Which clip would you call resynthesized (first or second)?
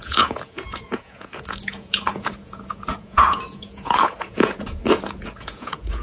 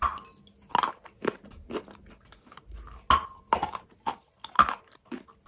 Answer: first